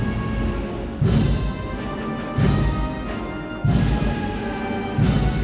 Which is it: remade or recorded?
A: recorded